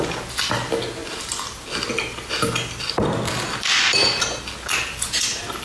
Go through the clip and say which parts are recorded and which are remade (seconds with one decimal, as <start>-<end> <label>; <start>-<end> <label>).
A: 0.0-5.6 recorded